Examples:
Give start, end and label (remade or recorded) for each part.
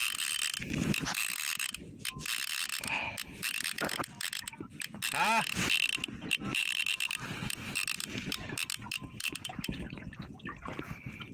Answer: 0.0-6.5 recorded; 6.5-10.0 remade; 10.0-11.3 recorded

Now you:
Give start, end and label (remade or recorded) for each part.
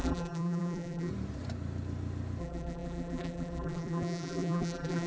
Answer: 0.0-1.1 remade; 1.1-2.4 recorded; 2.4-5.1 remade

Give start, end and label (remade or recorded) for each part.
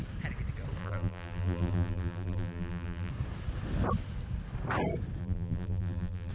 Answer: 0.0-0.8 recorded; 0.8-3.1 remade; 3.1-5.2 recorded; 5.2-6.3 remade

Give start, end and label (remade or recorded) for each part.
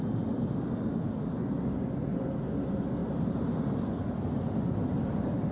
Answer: 0.0-5.5 recorded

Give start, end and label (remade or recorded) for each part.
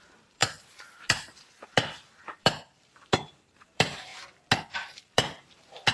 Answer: 0.0-4.1 remade; 4.1-4.6 recorded; 4.6-5.9 remade